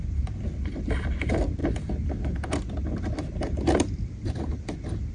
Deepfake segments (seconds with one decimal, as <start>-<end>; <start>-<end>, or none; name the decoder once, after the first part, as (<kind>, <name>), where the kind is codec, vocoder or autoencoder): none